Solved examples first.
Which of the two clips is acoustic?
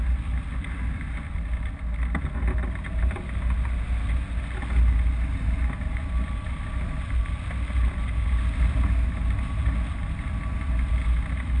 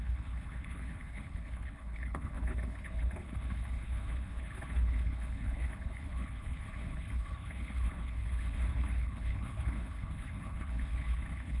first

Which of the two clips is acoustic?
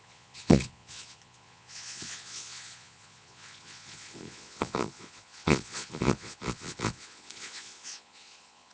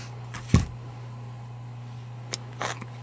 second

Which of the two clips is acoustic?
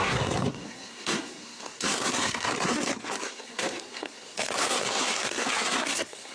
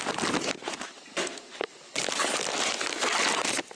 second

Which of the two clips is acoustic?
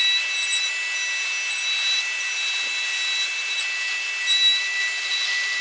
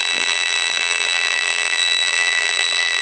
first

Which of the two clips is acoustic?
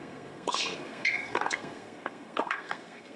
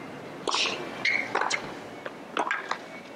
second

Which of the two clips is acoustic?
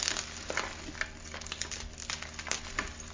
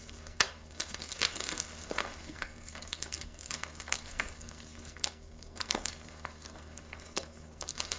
first